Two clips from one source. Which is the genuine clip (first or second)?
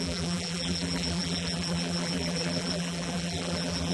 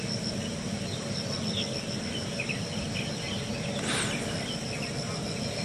second